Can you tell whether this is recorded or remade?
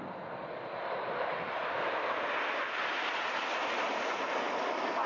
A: recorded